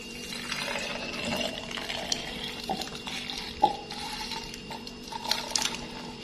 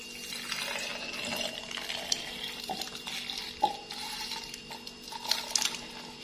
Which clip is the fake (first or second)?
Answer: first